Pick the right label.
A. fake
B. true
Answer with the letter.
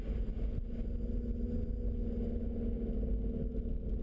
B